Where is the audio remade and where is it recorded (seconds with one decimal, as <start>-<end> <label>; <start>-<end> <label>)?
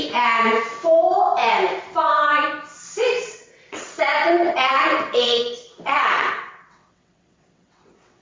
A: 0.0-3.0 recorded; 3.0-8.2 remade